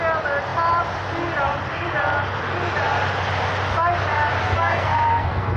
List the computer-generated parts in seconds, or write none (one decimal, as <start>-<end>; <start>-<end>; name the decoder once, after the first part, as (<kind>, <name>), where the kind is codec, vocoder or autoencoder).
4.4-5.6 (codec, SNAC)